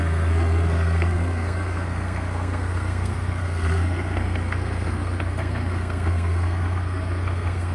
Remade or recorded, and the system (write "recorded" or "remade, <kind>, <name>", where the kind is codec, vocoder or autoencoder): remade, codec, SNAC